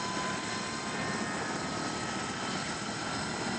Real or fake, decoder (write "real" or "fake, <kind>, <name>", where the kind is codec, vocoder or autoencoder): real